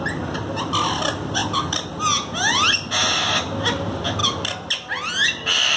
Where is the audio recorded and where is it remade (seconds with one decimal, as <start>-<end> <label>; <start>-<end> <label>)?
0.0-5.8 recorded